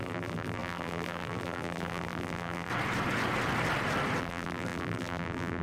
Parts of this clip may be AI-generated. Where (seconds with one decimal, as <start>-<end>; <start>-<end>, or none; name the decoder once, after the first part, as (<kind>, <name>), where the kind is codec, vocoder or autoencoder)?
0.0-2.7 (vocoder, BigVGAN v2); 4.2-5.6